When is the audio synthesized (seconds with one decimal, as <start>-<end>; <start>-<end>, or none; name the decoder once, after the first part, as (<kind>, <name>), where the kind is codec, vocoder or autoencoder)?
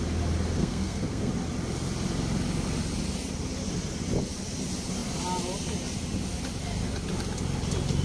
0.6-1.3 (codec, SNAC)